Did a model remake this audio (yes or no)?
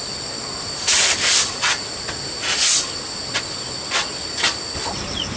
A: no